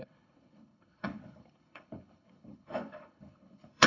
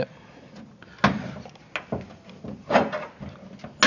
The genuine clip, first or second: second